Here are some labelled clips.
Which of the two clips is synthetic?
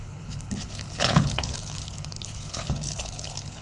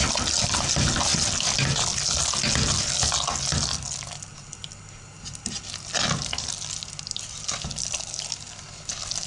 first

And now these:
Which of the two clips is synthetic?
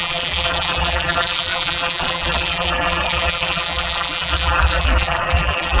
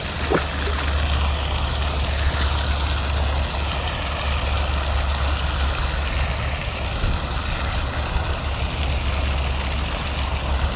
first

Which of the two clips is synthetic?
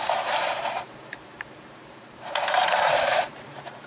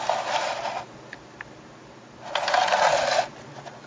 first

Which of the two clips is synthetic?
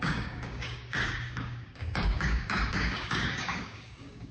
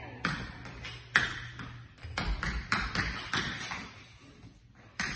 first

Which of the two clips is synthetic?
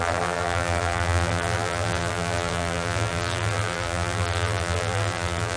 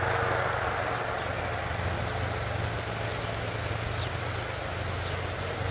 first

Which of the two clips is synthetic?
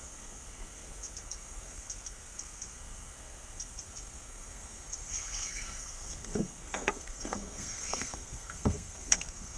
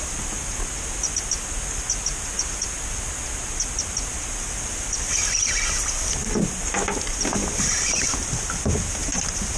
first